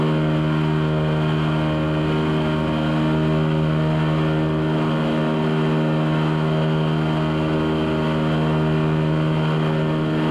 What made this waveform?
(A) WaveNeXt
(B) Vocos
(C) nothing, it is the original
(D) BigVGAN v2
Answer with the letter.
C